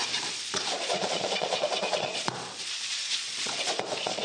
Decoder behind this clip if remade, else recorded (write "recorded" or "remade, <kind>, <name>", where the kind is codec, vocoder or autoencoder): remade, vocoder, Vocos